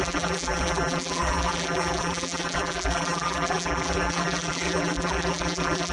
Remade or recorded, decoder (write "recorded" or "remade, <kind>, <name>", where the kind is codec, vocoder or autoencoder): remade, vocoder, BigVGAN v2